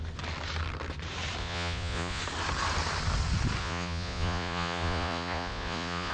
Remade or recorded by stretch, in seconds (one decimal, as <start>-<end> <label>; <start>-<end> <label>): 0.0-1.4 recorded; 1.4-2.2 remade; 2.2-3.6 recorded; 3.6-6.1 remade

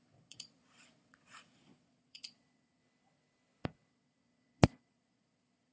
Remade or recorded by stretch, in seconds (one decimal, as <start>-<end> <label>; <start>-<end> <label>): 0.0-2.8 remade; 2.8-3.9 recorded; 3.9-5.7 remade

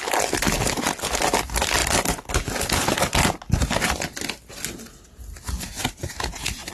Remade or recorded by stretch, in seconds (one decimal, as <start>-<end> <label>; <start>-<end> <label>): 0.0-6.7 recorded

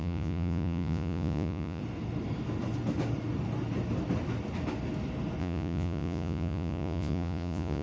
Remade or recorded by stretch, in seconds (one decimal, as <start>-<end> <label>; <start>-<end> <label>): 0.0-1.8 remade; 1.8-5.4 recorded; 5.4-7.8 remade

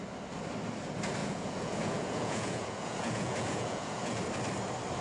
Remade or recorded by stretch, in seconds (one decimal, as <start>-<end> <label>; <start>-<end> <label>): 0.0-1.2 recorded; 1.2-4.2 remade; 4.2-5.0 recorded

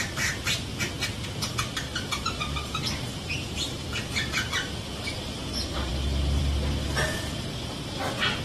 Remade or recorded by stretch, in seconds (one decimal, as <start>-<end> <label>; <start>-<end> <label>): 0.0-8.4 recorded